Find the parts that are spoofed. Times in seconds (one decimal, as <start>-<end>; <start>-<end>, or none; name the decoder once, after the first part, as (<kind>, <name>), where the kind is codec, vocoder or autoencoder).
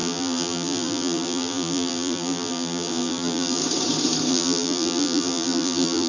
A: 0.0-3.6 (vocoder, BigVGAN v2); 4.3-6.1